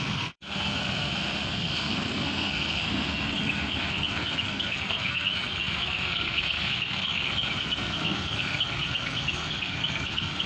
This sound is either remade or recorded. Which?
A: remade